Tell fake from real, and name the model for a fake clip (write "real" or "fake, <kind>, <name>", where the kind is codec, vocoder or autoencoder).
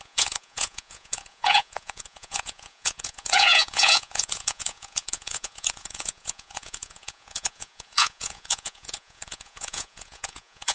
fake, vocoder, Vocos